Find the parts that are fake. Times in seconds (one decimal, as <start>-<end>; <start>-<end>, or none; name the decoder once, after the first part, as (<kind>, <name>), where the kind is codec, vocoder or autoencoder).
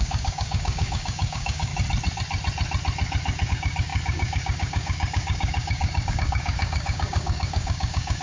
0.0-1.7 (codec, DAC); 3.5-8.2